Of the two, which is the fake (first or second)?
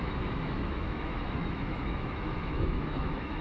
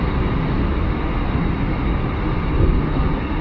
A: first